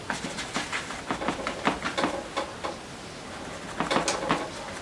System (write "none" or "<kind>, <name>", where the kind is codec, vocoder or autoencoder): none